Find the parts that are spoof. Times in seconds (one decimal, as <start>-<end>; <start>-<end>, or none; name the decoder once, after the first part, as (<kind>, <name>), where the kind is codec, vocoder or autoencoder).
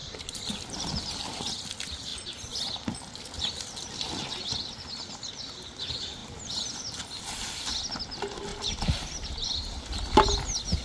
0.0-1.4 (vocoder, BigVGAN v2); 8.5-9.3